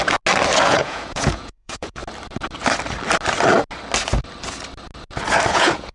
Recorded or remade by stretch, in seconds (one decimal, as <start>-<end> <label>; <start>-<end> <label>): 0.0-0.6 recorded; 0.6-2.0 remade; 2.0-5.5 recorded; 5.5-5.9 remade